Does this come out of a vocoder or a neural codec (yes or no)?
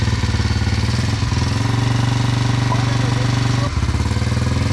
no